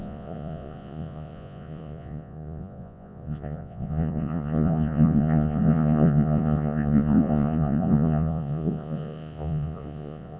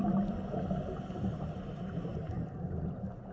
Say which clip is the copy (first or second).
first